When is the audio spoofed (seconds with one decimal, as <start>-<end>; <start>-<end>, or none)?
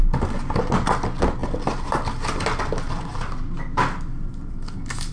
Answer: none